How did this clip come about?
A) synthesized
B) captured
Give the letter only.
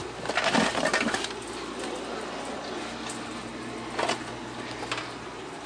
B